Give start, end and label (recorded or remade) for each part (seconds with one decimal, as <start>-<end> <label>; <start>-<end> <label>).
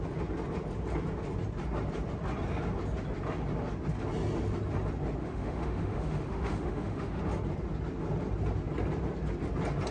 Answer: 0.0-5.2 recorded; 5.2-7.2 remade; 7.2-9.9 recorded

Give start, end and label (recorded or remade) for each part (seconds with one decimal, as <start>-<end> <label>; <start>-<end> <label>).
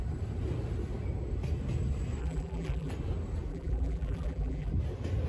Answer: 0.0-2.2 recorded; 2.2-2.9 remade; 2.9-3.5 recorded; 3.5-4.7 remade; 4.7-5.3 recorded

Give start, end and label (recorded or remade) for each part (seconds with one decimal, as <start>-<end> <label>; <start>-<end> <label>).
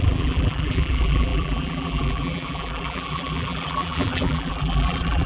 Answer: 0.0-5.3 remade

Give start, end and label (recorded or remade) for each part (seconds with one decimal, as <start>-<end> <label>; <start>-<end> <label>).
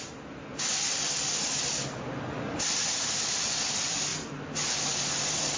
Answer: 0.0-5.6 remade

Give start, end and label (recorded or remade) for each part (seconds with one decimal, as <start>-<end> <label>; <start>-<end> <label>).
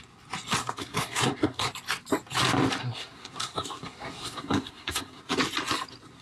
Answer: 0.0-0.6 recorded; 0.6-1.7 remade; 1.7-2.8 recorded; 2.8-5.2 remade; 5.2-6.2 recorded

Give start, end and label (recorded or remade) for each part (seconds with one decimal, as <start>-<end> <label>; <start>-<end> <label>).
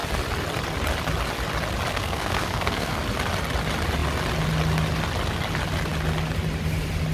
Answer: 0.0-1.9 recorded; 1.9-3.0 remade; 3.0-7.1 recorded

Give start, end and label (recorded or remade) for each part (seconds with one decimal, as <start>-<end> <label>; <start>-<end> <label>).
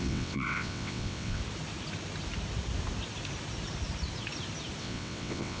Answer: 0.0-1.4 remade; 1.4-4.8 recorded; 4.8-5.6 remade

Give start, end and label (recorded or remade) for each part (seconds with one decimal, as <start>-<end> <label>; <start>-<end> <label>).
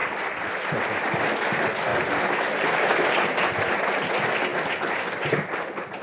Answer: 0.0-6.0 recorded